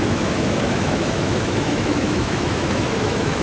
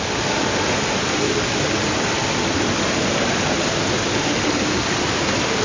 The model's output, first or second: first